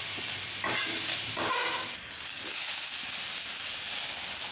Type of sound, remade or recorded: recorded